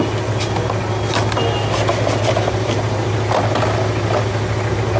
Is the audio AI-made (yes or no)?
no